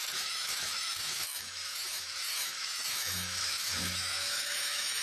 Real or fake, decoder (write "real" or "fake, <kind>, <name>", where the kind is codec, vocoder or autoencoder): fake, autoencoder, DAC-VAE